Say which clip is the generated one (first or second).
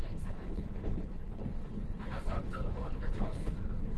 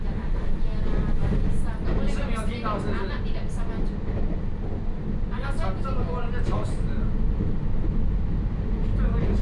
first